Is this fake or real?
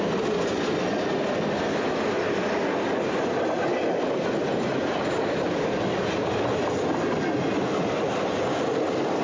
real